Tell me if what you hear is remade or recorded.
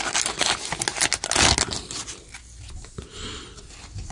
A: recorded